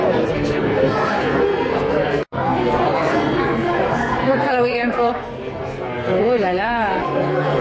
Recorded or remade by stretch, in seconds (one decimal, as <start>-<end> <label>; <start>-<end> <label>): 0.0-7.6 remade